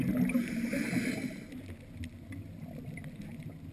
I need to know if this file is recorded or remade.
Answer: recorded